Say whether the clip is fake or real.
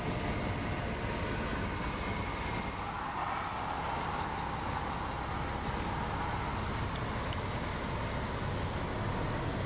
real